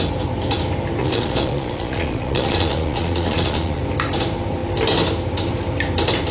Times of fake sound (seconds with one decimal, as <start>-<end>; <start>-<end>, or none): 1.0-3.8